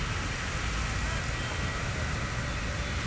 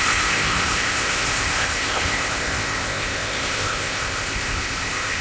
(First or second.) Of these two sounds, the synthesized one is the second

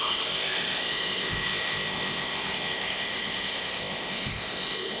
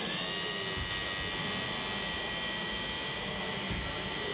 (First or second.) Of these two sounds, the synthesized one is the first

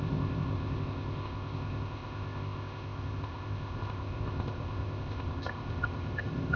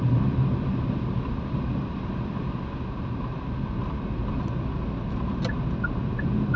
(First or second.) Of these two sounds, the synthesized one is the first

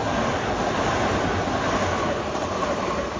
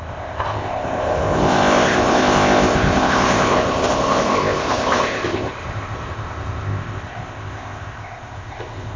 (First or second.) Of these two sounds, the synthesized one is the second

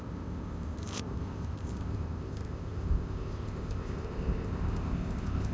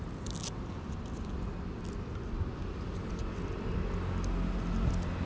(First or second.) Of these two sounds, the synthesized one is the first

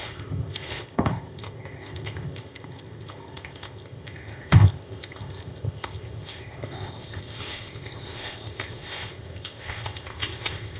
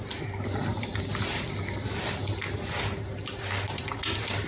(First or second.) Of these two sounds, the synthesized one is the first